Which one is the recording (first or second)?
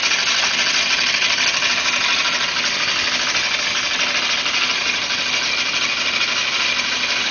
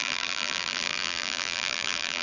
first